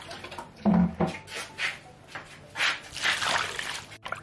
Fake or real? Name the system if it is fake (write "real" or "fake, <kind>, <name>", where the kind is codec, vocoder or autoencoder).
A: real